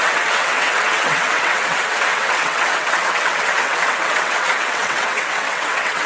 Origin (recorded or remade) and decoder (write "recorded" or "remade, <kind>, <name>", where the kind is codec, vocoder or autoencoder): remade, vocoder, WaveNeXt